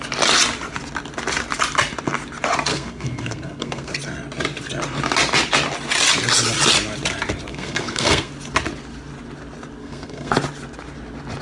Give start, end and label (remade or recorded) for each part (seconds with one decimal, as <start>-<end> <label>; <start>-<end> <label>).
0.0-2.7 recorded; 2.7-3.9 remade; 3.9-7.5 recorded; 7.5-8.3 remade; 8.3-9.8 recorded; 9.8-10.3 remade; 10.3-11.4 recorded